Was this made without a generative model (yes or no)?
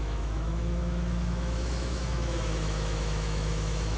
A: no